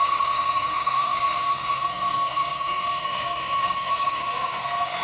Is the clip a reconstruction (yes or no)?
yes